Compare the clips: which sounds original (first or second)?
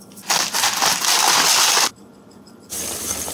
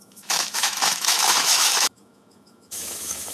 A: first